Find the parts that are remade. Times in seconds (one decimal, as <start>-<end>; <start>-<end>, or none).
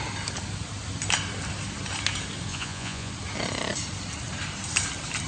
2.5-3.1